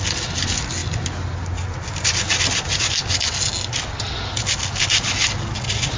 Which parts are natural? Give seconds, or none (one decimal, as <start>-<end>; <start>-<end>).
0.0-6.0